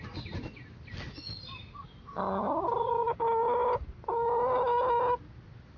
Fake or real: real